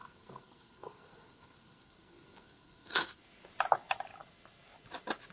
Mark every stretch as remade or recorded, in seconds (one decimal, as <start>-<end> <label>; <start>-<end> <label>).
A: 0.0-3.2 remade; 3.2-5.3 recorded